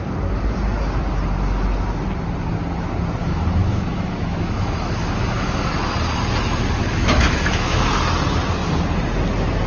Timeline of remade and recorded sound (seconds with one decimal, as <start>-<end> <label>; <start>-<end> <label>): 0.0-3.2 recorded; 3.2-5.7 remade; 5.7-6.8 recorded; 6.8-7.9 remade; 7.9-9.7 recorded